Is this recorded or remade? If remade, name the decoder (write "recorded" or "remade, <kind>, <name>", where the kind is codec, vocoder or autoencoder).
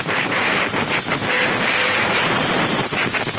remade, vocoder, BigVGAN v2